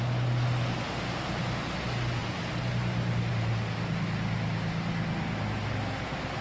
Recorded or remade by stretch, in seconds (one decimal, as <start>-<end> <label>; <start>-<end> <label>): 0.0-6.4 recorded